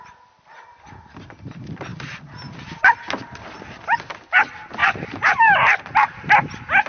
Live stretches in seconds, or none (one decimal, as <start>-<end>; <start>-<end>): 0.0-4.8; 6.3-6.9